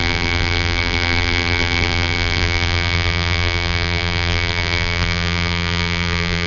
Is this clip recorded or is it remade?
remade